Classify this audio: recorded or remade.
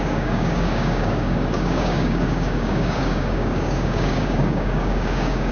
remade